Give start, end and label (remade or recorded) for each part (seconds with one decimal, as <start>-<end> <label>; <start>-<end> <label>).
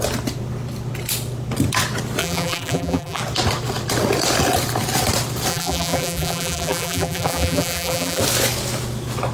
0.0-2.2 recorded; 2.2-3.2 remade; 3.2-5.5 recorded; 5.5-8.2 remade; 8.2-9.3 recorded